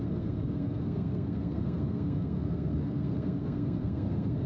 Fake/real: fake